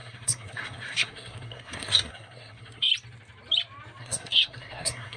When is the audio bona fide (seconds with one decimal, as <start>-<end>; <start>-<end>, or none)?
2.9-4.0